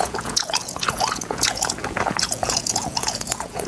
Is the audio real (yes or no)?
no